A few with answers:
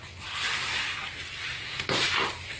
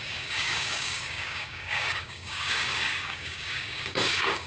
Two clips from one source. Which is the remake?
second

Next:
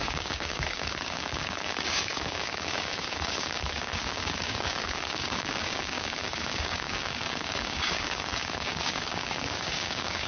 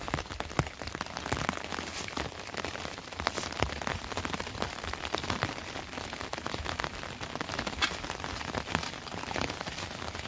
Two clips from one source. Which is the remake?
first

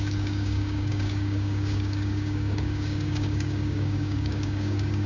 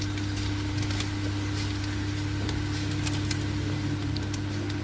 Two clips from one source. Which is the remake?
first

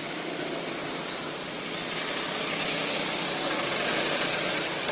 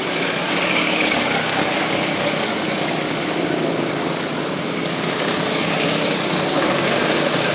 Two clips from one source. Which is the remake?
second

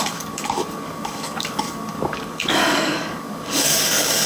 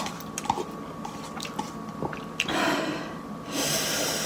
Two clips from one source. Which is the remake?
first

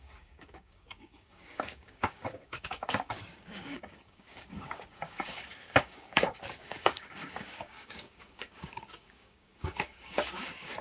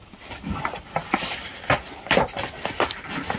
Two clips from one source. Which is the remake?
first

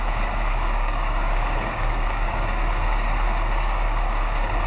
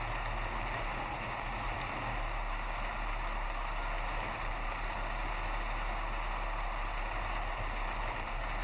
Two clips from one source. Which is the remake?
first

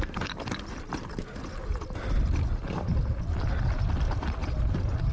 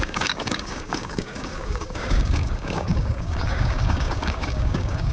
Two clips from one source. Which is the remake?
second